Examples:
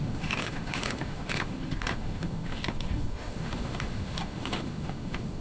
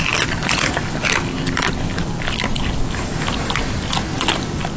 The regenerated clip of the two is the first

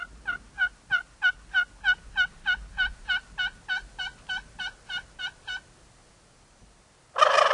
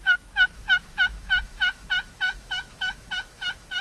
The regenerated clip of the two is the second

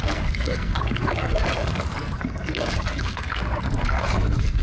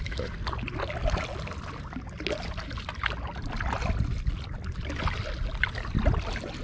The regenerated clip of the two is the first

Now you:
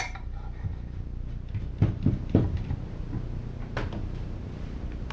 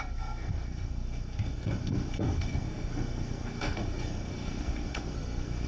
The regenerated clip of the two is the second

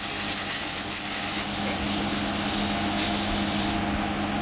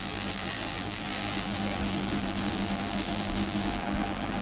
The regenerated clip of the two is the second